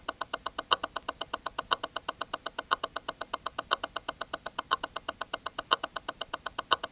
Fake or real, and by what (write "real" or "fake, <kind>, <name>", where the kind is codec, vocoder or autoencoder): real